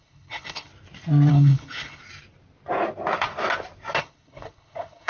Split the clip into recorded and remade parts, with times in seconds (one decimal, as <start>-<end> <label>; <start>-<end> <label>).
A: 0.0-0.7 remade; 0.7-1.3 recorded; 1.3-2.0 remade; 2.0-4.0 recorded; 4.0-5.1 remade